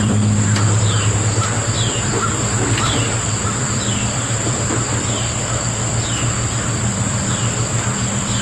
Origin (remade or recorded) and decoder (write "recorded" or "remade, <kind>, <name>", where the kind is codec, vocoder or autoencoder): remade, vocoder, BigVGAN v2